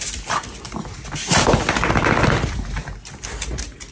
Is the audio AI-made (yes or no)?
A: no